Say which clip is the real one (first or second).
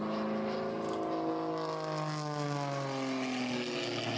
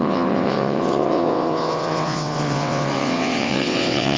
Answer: first